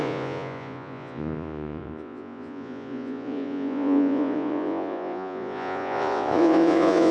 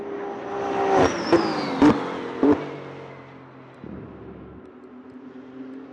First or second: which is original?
second